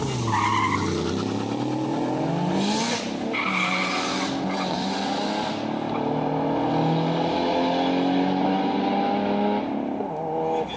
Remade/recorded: recorded